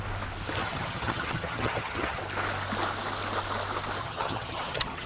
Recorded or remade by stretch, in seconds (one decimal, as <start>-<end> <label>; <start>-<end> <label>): 0.0-0.6 recorded; 0.6-2.2 remade; 2.2-4.0 recorded; 4.0-5.1 remade